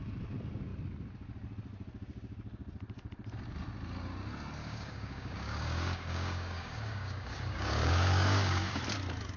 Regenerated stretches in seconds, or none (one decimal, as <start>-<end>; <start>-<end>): 4.6-8.8